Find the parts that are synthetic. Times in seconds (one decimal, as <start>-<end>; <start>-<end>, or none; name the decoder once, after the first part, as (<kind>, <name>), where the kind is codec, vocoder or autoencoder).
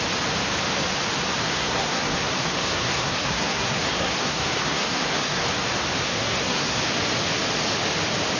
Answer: 1.4-5.4 (codec, SNAC); 6.0-6.8